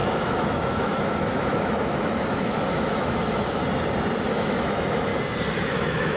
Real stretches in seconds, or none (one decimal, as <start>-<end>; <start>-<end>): 3.6-4.2; 5.1-5.7

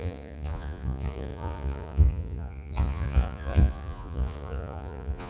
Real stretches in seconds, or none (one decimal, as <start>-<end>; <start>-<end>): none

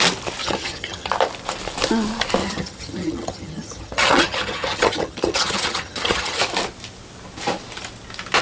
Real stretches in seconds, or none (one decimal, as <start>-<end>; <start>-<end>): 0.0-0.4; 1.1-2.4; 6.4-8.4

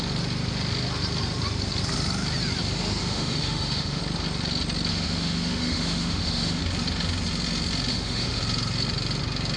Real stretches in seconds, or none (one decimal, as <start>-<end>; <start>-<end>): 0.0-3.0; 4.0-4.9; 6.6-7.9; 8.4-9.6

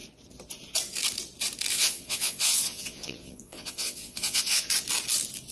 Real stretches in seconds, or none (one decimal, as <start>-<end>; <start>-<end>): 0.0-1.7; 4.7-5.5

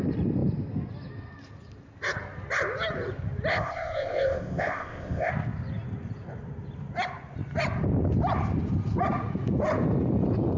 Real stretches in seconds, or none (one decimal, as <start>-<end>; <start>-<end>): 0.0-3.5; 5.3-10.6